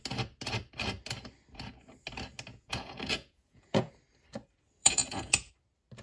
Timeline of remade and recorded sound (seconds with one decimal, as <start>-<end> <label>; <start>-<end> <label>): 0.0-2.5 recorded; 2.5-3.9 remade; 3.9-4.8 recorded; 4.8-5.5 remade; 5.5-6.0 recorded